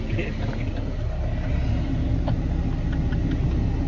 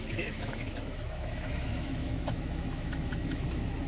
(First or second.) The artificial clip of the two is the second